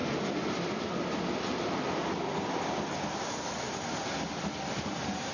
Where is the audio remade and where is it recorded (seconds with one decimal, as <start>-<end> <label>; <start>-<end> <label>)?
0.0-5.3 recorded